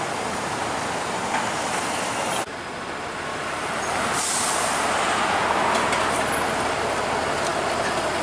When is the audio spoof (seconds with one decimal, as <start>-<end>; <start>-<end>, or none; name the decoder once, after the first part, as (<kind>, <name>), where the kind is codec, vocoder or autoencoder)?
none